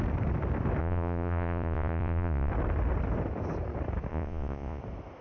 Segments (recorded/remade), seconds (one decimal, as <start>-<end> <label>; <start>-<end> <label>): 0.0-0.8 recorded; 0.8-2.5 remade; 2.5-4.1 recorded; 4.1-4.8 remade; 4.8-5.2 recorded